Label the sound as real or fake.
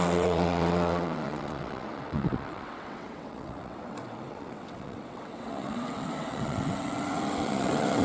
fake